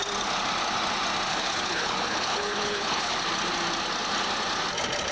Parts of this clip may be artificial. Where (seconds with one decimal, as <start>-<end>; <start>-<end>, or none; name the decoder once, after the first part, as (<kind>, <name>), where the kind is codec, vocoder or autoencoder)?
1.3-3.2 (codec, HILCodec)